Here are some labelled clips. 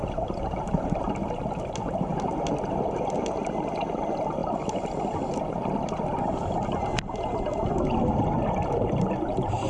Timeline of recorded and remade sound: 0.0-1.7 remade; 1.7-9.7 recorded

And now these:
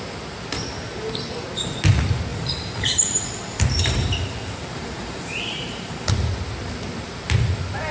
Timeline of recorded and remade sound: 0.0-2.3 recorded; 2.3-6.1 remade; 6.1-7.9 recorded

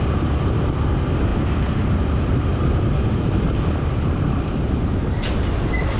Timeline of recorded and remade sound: 0.0-6.0 remade

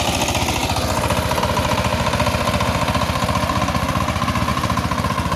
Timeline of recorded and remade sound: 0.0-4.5 recorded; 4.5-5.4 remade

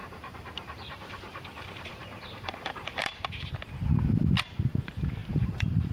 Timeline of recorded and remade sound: 0.0-3.5 remade; 3.5-5.2 recorded; 5.2-5.9 remade

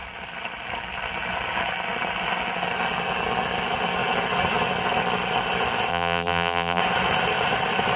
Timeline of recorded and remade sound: 0.0-5.9 recorded; 5.9-6.8 remade; 6.8-8.0 recorded

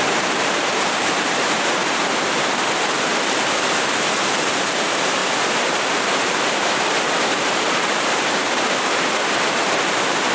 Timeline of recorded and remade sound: 0.0-1.8 remade; 1.8-3.9 recorded; 3.9-5.2 remade; 5.2-6.0 recorded; 6.0-10.3 remade